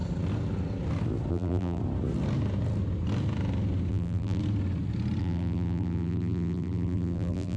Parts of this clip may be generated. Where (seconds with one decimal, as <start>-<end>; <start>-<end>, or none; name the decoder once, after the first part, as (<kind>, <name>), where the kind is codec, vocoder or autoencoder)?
1.3-1.8 (vocoder, BigVGAN v2); 3.9-4.4; 5.2-7.6